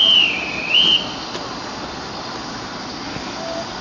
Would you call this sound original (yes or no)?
yes